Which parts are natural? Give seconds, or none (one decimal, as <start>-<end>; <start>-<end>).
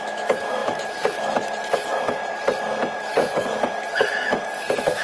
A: 2.2-3.0